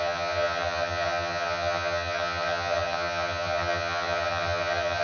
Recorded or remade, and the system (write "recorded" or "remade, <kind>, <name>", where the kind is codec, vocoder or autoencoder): remade, vocoder, HiFi-GAN